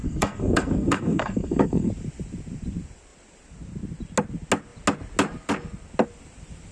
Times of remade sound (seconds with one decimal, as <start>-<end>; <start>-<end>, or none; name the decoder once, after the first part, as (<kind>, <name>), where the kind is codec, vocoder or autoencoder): 0.0-1.9 (codec, SNAC)